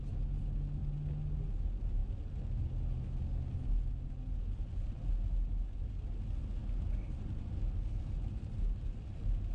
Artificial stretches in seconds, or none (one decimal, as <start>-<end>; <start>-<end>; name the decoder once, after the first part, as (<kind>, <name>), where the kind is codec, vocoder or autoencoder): none